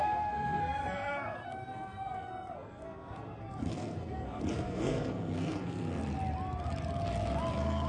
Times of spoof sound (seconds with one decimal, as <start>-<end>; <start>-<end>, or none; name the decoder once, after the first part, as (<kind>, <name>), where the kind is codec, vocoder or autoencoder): 0.0-6.0 (codec, SNAC); 7.5-7.9

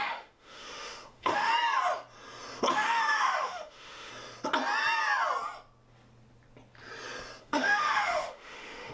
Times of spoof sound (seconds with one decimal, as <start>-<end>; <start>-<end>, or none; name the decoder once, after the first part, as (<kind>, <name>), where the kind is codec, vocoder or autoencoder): 0.0-1.5 (autoencoder, DAC-VAE); 2.7-4.1; 7.4-8.9

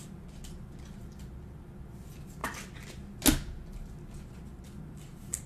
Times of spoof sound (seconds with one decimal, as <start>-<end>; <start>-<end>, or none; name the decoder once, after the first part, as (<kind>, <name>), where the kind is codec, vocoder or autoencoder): none

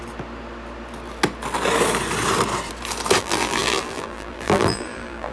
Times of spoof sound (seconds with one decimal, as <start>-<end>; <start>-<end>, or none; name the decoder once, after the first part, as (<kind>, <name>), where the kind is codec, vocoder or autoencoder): 3.2-5.3 (vocoder, BigVGAN v2)

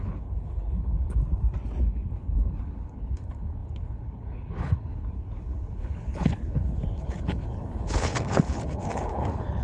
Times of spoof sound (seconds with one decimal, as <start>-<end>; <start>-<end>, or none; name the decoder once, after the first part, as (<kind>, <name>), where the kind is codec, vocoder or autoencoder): 0.0-1.2 (codec, HILCodec); 1.8-9.6